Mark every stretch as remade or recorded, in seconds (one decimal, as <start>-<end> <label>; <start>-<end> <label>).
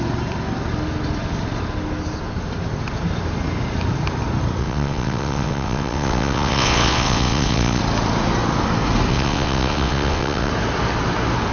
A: 0.0-4.6 recorded; 4.6-7.8 remade; 7.8-9.1 recorded; 9.1-10.5 remade; 10.5-11.5 recorded